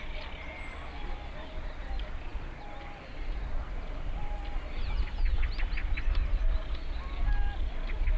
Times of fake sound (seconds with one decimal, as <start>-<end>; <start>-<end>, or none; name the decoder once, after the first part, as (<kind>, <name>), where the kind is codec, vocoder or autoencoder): none